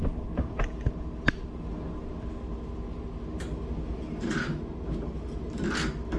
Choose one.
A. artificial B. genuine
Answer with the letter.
B